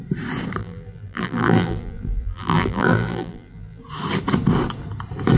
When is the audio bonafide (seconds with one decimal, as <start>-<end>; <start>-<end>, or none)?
0.0-0.6; 3.8-5.4